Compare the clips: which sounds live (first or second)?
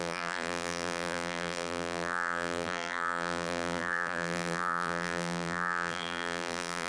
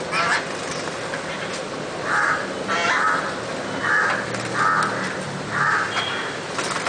second